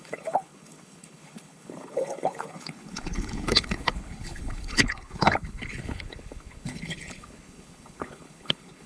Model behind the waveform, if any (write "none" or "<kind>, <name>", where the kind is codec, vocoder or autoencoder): codec, HILCodec